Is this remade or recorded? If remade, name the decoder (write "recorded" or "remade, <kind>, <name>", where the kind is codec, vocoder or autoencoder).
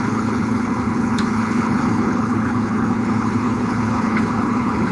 remade, codec, HILCodec